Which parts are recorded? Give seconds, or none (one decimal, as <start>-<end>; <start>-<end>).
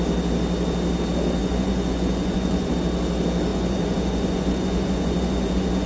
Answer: 0.0-1.4; 2.7-3.5